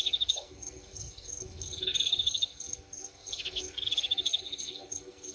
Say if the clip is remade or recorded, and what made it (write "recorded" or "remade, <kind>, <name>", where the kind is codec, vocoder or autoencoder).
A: remade, codec, SNAC